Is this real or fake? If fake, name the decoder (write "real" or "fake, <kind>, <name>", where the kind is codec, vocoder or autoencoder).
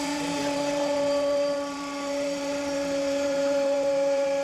fake, vocoder, BigVGAN v2